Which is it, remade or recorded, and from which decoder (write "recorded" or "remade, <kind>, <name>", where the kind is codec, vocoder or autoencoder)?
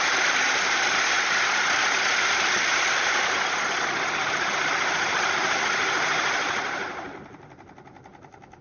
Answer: recorded